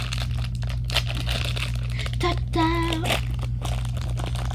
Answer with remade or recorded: recorded